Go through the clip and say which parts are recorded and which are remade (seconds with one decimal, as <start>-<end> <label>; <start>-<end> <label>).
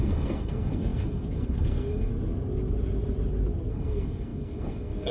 0.0-2.1 remade; 2.1-3.7 recorded; 3.7-5.1 remade